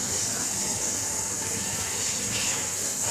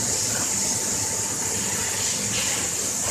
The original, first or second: second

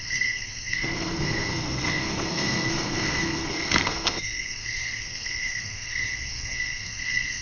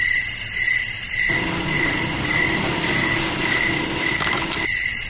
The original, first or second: second